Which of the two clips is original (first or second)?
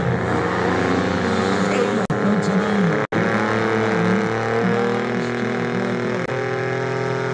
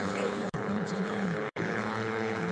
first